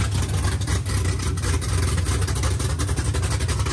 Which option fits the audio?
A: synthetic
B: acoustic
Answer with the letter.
B